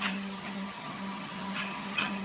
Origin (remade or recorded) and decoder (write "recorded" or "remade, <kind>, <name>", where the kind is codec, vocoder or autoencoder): remade, vocoder, HiFi-GAN